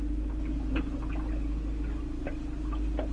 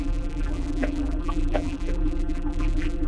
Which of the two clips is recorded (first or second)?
first